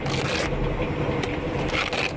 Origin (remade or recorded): recorded